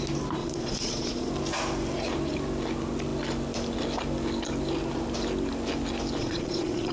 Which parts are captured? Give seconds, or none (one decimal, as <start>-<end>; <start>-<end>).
0.0-0.4; 1.3-6.2